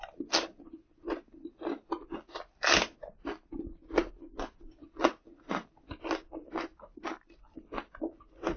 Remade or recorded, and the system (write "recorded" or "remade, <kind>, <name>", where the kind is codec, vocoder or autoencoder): recorded